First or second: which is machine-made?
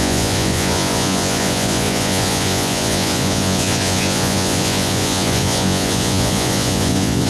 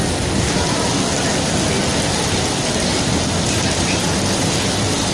first